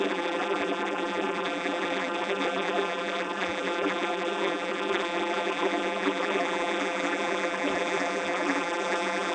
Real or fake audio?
fake